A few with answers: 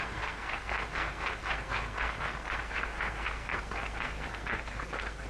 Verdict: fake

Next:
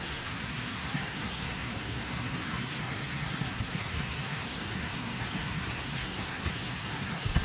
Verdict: fake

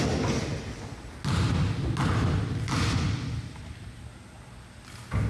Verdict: real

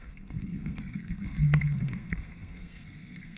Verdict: fake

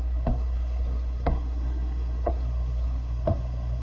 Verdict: fake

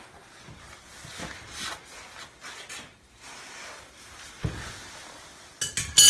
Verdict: real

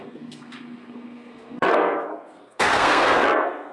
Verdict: fake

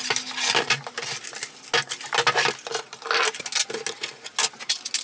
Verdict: real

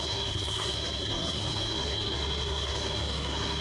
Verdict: fake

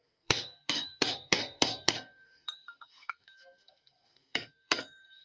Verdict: fake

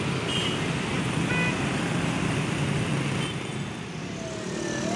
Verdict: real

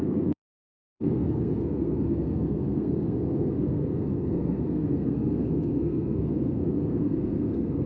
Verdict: fake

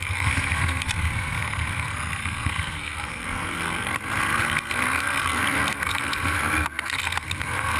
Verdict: fake